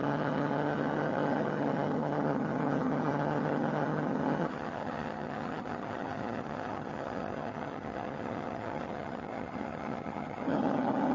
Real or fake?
fake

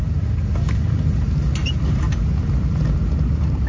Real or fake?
real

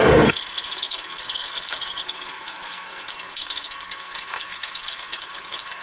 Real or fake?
fake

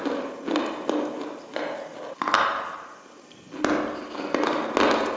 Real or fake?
real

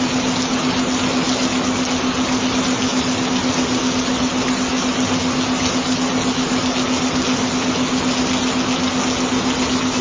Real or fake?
real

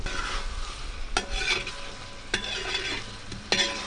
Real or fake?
real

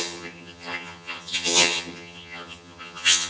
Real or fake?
fake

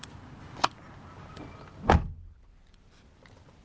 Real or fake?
real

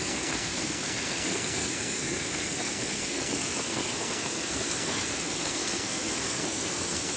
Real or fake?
fake